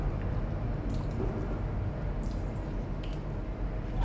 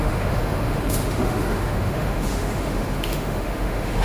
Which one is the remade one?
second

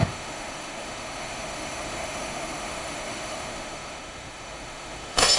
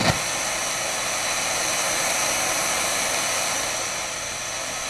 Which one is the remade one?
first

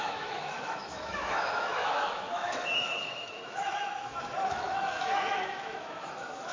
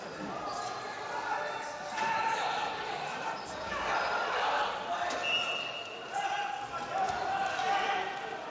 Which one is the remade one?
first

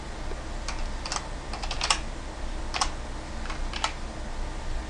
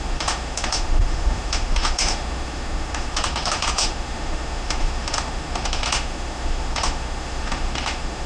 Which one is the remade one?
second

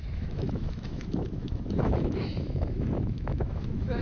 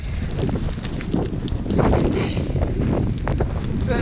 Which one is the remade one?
first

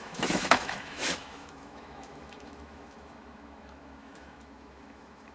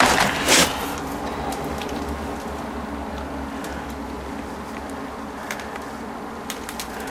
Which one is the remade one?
first